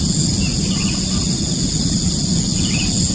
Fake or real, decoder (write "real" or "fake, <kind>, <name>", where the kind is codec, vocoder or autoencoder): real